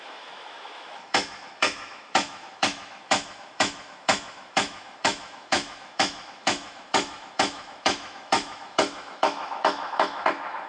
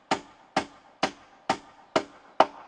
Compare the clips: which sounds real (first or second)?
second